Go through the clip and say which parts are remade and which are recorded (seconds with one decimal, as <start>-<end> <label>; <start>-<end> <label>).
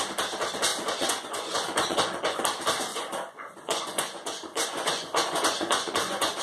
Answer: 0.0-0.7 recorded; 0.7-2.4 remade; 2.4-2.9 recorded; 2.9-6.4 remade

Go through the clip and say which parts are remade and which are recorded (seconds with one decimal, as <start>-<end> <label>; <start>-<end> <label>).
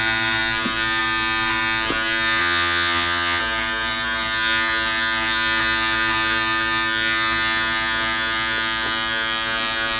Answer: 0.0-2.4 recorded; 2.4-3.4 remade; 3.4-10.0 recorded